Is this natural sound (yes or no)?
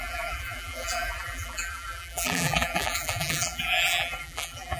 no